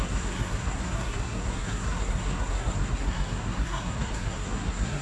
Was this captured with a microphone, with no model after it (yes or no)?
no